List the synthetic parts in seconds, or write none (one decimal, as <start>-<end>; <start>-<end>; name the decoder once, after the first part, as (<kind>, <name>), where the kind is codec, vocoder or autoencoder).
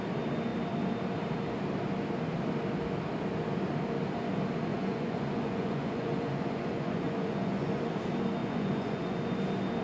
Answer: 4.7-7.8 (vocoder, Vocos); 8.4-9.2